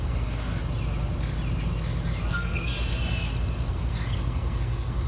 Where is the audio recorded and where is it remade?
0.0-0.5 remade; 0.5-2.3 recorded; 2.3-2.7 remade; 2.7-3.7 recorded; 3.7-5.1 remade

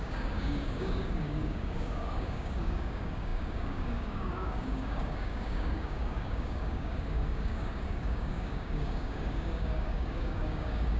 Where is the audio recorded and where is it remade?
0.0-11.0 remade

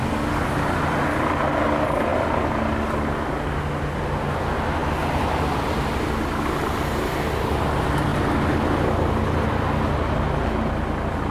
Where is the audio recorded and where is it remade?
0.0-11.3 recorded

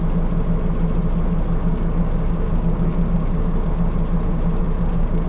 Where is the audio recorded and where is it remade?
0.0-1.6 recorded; 1.6-3.7 remade; 3.7-4.6 recorded; 4.6-5.3 remade